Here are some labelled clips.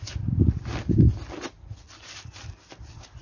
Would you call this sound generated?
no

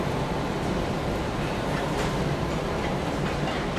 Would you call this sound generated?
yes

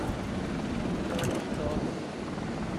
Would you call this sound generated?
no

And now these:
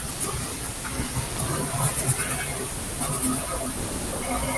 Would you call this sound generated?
no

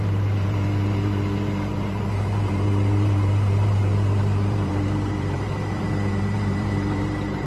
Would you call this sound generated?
yes